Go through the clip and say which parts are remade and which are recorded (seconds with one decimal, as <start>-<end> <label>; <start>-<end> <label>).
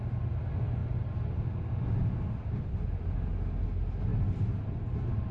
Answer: 0.0-0.8 recorded; 0.8-1.7 remade; 1.7-5.3 recorded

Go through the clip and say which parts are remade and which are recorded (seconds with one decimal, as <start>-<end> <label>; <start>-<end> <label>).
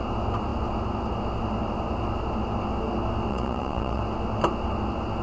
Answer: 0.0-3.3 recorded; 3.3-4.0 remade; 4.0-5.2 recorded